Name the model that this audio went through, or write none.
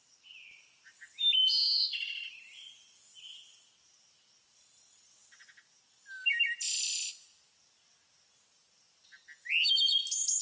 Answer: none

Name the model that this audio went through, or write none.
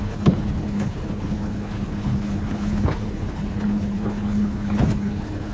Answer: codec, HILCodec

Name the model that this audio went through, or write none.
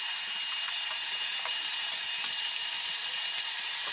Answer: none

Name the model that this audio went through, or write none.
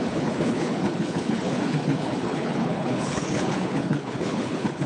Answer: codec, HILCodec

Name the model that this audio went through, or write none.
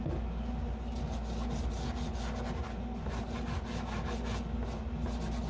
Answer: none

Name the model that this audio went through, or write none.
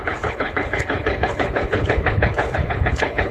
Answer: codec, HILCodec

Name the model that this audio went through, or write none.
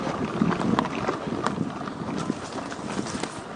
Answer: none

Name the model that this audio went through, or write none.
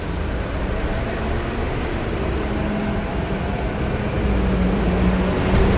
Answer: none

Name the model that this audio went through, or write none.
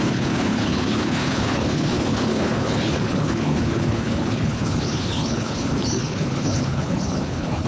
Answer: codec, HILCodec